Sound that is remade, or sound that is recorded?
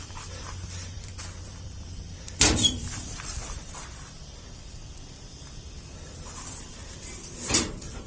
remade